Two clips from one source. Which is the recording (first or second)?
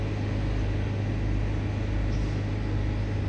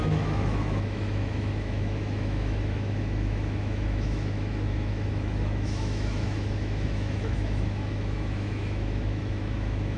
first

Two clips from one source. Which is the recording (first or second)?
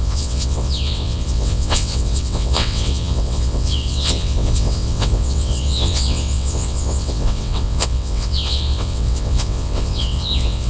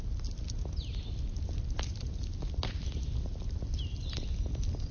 second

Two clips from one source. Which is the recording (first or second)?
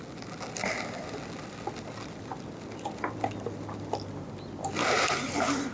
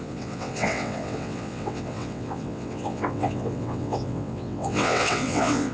first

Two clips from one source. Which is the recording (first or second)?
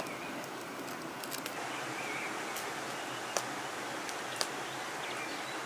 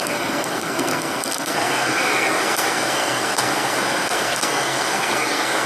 first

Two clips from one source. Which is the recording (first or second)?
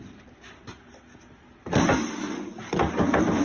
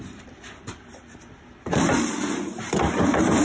first